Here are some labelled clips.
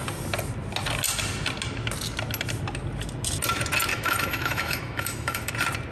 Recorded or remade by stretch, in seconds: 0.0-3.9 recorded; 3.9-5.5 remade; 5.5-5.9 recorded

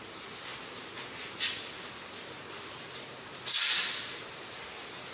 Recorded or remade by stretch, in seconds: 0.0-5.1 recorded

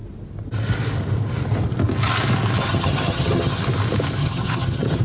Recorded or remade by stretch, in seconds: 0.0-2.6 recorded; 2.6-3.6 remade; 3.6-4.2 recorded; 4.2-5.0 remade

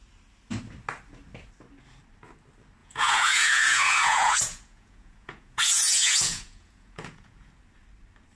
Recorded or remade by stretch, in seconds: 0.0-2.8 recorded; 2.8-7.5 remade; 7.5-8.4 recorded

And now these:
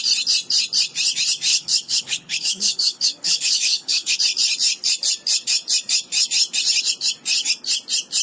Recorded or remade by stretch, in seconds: 0.0-1.5 recorded; 1.5-4.2 remade; 4.2-8.2 recorded

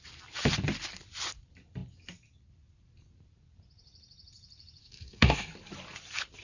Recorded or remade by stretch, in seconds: 0.0-4.8 recorded; 4.8-5.5 remade; 5.5-6.4 recorded